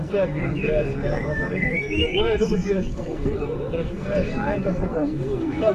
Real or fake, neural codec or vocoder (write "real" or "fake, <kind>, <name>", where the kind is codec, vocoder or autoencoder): fake, codec, SNAC